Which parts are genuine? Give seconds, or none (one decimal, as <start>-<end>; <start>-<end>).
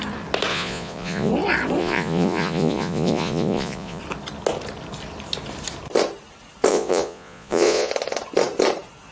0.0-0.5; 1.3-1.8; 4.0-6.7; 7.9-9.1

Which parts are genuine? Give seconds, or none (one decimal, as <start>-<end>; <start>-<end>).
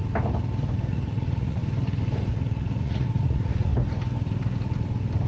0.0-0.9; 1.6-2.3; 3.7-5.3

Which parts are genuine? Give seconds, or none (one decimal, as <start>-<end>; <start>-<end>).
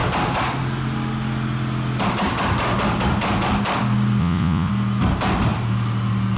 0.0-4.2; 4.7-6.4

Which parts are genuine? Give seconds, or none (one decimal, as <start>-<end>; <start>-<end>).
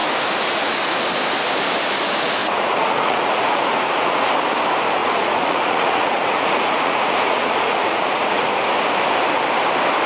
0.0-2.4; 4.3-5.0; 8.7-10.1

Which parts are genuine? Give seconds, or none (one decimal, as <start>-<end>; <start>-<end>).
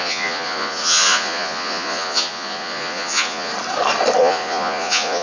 3.5-4.2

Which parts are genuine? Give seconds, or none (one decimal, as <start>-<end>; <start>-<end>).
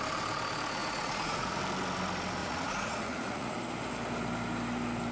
0.0-0.8; 1.6-2.4; 3.5-5.1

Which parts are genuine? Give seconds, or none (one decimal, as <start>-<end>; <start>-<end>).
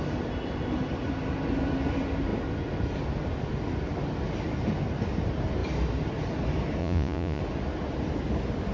0.0-6.8; 7.4-8.7